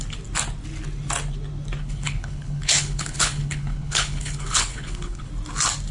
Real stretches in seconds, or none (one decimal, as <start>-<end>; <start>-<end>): 0.0-1.8; 5.3-5.9